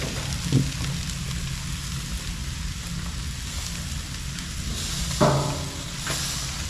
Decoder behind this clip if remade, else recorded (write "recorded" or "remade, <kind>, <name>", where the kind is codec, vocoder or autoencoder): recorded